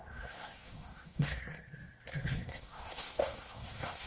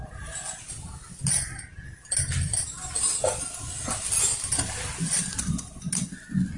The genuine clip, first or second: second